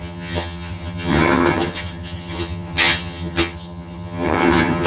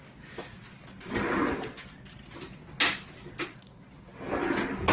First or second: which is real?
second